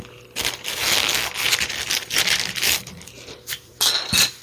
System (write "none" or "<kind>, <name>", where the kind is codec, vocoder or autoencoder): none